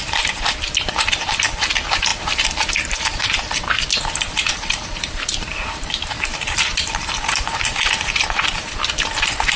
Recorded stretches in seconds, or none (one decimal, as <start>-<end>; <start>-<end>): none